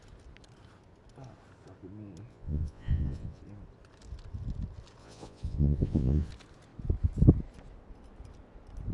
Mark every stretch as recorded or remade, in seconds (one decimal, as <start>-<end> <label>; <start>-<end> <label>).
0.0-2.3 recorded; 2.3-3.4 remade; 3.4-5.0 recorded; 5.0-6.3 remade; 6.3-8.9 recorded